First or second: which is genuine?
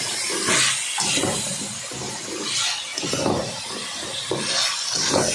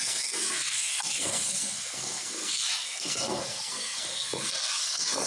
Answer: first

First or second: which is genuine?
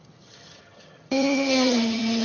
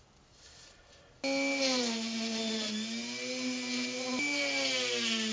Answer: second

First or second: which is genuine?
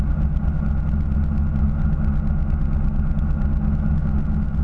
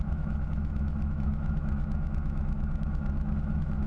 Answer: first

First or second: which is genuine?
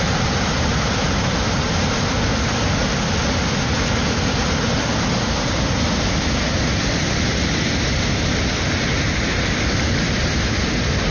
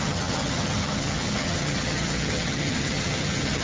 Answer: first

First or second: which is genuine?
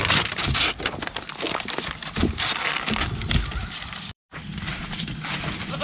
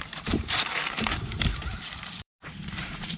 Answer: first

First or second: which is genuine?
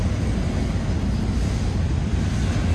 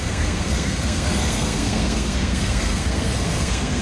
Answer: first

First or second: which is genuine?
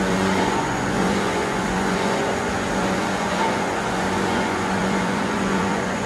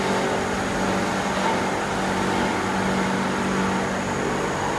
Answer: second